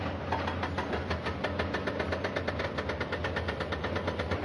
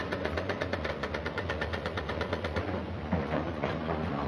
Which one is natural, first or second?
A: first